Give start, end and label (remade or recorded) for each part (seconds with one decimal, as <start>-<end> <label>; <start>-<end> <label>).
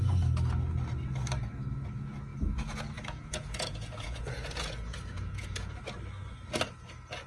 0.0-2.3 recorded; 2.3-5.8 remade; 5.8-7.3 recorded